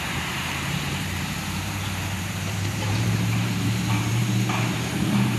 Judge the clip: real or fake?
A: fake